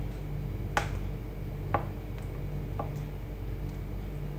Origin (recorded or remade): recorded